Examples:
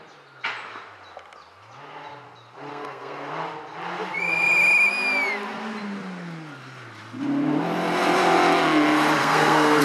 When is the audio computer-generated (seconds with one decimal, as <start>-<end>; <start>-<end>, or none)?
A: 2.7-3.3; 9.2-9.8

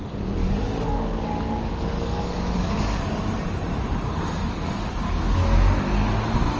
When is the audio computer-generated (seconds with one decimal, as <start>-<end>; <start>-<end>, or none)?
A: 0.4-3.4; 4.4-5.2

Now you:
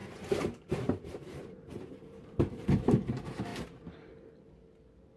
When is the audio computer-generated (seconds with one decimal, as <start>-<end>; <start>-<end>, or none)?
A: 0.0-3.1